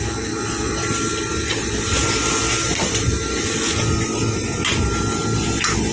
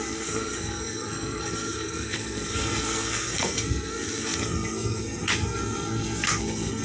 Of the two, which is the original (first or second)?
first